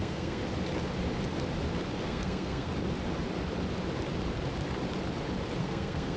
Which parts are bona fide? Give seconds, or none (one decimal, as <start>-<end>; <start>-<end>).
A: 0.4-2.1; 2.7-5.6